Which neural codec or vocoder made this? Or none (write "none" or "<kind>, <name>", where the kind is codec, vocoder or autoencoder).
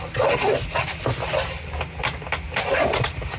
none